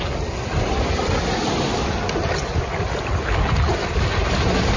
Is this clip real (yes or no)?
yes